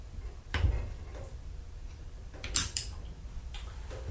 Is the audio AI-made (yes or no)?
yes